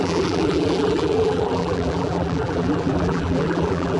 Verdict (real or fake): fake